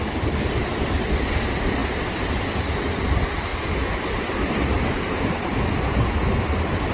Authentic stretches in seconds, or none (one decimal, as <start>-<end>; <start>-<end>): 3.5-4.9

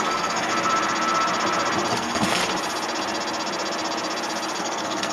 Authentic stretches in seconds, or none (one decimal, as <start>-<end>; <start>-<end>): 0.5-1.9; 2.4-4.6

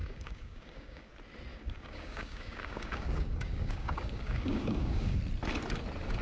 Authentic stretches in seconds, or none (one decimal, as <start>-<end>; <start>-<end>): 1.1-1.5; 5.2-6.2

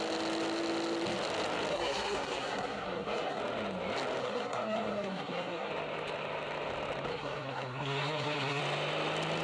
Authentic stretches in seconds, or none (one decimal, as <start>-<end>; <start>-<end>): 0.0-1.7; 3.4-4.2; 5.7-7.1; 8.6-9.4

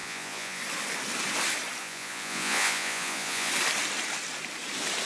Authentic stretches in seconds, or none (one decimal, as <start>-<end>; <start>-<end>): 0.6-1.8; 3.5-5.0

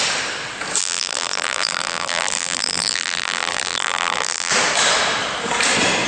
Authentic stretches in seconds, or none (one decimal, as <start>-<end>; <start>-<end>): 0.0-0.8; 4.5-6.1

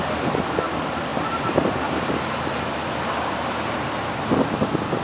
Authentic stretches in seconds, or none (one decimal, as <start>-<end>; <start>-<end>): 0.0-5.0